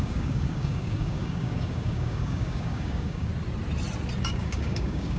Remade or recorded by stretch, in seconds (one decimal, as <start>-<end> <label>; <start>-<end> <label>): 0.0-3.3 remade; 3.3-4.2 recorded; 4.2-5.2 remade